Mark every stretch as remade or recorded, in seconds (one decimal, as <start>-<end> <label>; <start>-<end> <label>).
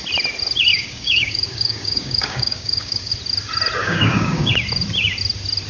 0.0-0.7 recorded; 0.7-3.1 remade; 3.1-3.8 recorded; 3.8-4.5 remade; 4.5-5.7 recorded